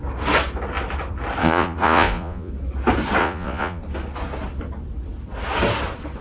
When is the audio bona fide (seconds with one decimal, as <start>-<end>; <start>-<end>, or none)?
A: 0.0-1.4; 2.5-3.2; 3.8-6.2